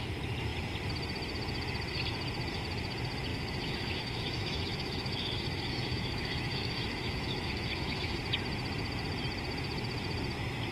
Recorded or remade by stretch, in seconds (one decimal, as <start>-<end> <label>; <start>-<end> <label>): 0.0-3.3 recorded; 3.3-8.2 remade; 8.2-10.7 recorded